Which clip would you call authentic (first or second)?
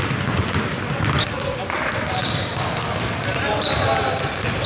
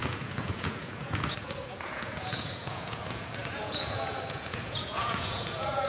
first